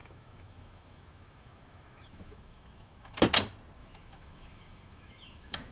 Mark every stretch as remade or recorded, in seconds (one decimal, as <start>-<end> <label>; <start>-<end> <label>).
0.0-3.2 remade; 3.2-3.8 recorded; 3.8-5.7 remade